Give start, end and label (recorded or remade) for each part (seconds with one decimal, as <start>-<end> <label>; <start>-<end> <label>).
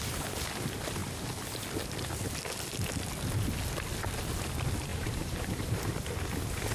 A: 0.0-4.9 recorded; 4.9-5.9 remade; 5.9-6.7 recorded